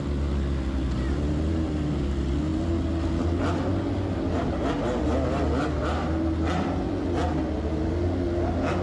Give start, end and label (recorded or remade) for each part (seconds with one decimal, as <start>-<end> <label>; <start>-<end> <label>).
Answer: 0.0-8.8 recorded